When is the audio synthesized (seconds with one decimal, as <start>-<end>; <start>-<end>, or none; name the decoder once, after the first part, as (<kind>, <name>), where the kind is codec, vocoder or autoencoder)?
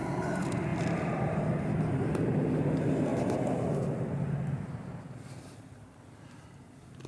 0.0-3.1 (vocoder, BigVGAN v2); 5.6-7.1